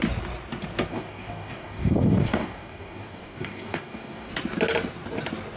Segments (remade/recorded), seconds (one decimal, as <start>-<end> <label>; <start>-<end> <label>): 0.0-0.9 recorded; 0.9-4.3 remade; 4.3-5.6 recorded